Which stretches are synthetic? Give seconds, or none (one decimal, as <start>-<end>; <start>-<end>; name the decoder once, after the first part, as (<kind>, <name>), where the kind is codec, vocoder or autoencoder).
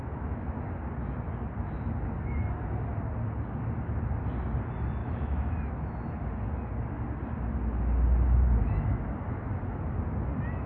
5.0-5.5 (autoencoder, DAC-VAE)